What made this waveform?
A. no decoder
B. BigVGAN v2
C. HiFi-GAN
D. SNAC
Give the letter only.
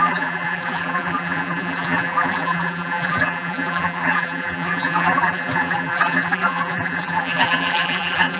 B